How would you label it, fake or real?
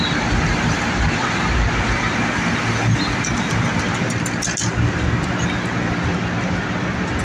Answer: real